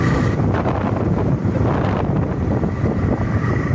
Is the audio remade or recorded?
remade